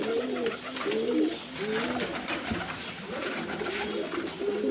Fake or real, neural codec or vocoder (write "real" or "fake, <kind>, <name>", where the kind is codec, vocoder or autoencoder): real